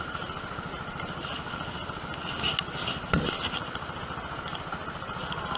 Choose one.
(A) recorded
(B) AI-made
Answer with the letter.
A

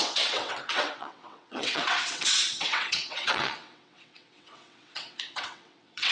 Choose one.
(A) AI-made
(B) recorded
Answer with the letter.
A